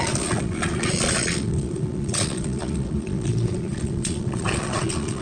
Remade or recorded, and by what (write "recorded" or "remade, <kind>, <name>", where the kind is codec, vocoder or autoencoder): remade, vocoder, Vocos